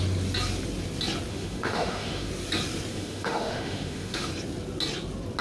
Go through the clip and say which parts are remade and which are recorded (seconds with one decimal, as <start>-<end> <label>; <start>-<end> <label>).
0.0-1.3 recorded; 1.3-2.3 remade; 2.3-2.9 recorded; 2.9-4.3 remade; 4.3-5.4 recorded